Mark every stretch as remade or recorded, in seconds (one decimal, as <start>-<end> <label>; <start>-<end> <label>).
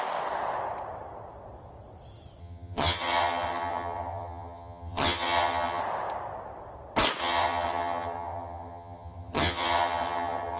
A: 0.0-2.4 recorded; 2.4-5.8 remade; 5.8-7.2 recorded; 7.2-10.6 remade